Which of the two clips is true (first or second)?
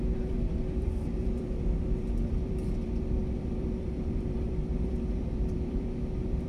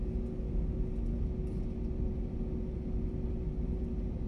second